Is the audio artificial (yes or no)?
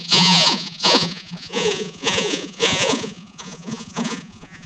yes